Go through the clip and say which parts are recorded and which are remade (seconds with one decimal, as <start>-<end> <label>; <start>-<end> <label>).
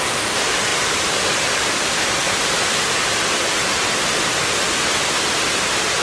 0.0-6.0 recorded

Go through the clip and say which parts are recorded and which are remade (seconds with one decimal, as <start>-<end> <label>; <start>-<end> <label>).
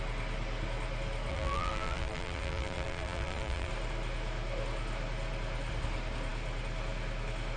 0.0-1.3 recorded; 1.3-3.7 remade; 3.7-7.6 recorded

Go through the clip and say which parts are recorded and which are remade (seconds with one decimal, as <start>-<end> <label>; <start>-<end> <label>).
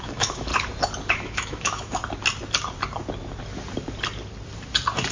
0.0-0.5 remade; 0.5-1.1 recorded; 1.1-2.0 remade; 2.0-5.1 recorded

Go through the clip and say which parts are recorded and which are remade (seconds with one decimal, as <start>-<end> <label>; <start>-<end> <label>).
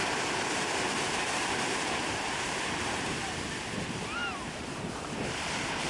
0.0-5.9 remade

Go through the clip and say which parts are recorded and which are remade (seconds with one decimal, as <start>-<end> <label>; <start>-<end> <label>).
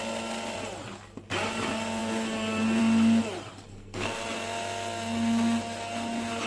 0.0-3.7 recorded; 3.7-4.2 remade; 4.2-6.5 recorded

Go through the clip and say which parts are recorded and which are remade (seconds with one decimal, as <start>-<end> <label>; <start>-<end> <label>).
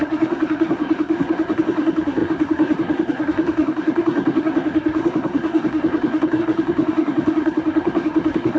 0.0-8.6 remade